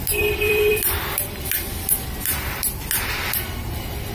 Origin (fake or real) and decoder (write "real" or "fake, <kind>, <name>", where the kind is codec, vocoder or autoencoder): fake, vocoder, BigVGAN v2